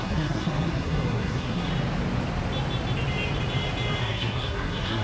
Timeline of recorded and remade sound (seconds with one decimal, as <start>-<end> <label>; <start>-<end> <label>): 0.0-1.7 remade; 1.7-4.0 recorded; 4.0-5.0 remade